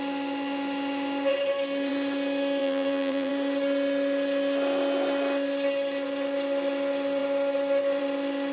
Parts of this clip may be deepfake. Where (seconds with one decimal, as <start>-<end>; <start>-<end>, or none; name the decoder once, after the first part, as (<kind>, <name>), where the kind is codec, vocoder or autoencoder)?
2.6-3.3 (vocoder, BigVGAN v2)